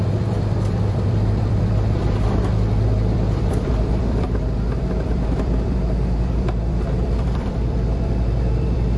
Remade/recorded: remade